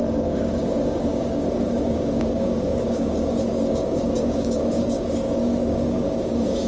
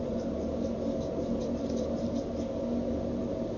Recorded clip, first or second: second